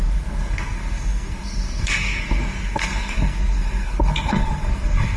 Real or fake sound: fake